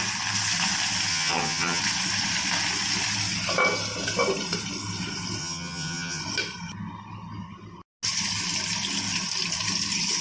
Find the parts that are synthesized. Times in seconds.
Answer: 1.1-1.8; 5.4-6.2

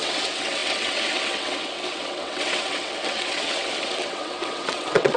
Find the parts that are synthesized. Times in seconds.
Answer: 0.0-5.2

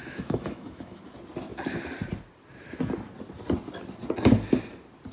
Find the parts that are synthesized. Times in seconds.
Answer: 0.0-1.0

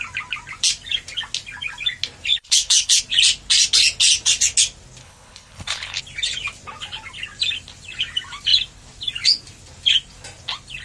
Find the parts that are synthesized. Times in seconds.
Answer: 2.3-3.0; 5.0-6.0